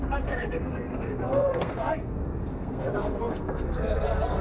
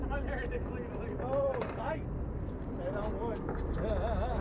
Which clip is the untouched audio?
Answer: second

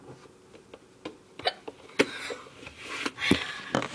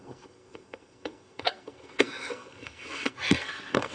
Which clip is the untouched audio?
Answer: first